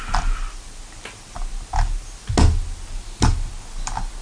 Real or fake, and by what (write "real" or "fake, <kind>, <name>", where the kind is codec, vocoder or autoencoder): real